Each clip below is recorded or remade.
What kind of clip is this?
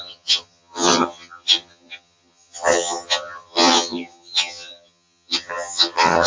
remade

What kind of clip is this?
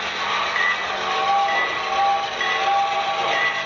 recorded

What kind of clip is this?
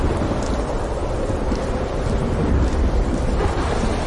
recorded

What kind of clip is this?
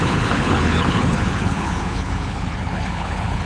remade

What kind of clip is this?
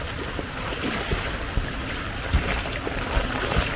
recorded